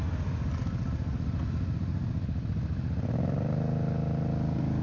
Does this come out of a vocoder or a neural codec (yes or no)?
no